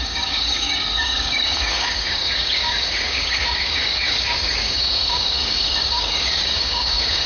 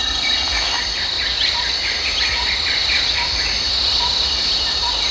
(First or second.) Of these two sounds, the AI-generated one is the first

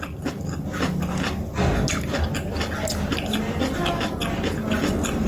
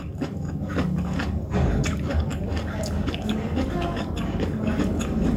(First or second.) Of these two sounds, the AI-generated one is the second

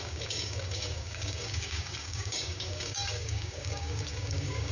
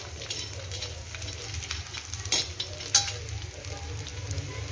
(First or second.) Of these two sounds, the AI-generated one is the first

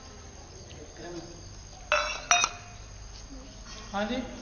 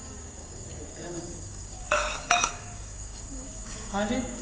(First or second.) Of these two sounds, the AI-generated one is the second